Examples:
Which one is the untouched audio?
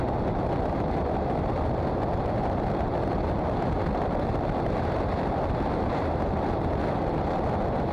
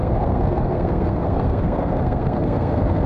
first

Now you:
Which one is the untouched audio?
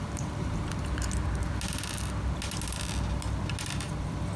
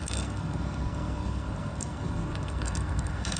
first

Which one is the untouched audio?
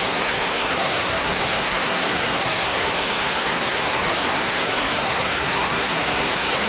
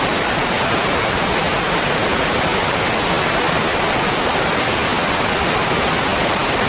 second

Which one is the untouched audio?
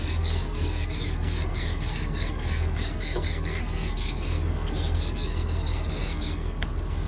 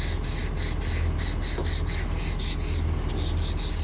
second